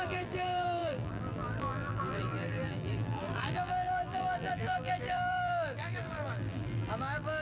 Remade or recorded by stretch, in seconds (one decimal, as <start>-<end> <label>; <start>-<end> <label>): 0.0-7.4 remade